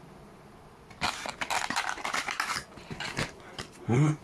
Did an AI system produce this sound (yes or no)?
no